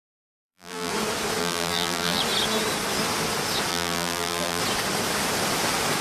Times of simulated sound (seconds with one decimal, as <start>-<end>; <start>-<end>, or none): 0.0-0.9; 1.4-2.2; 3.7-4.6